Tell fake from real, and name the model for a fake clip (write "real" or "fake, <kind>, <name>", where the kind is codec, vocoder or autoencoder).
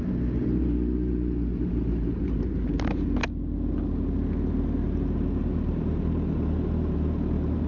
real